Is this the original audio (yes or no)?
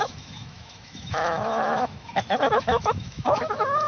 no